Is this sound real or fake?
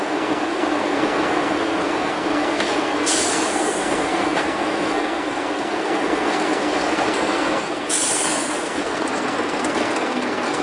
fake